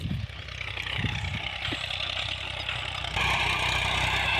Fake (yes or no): no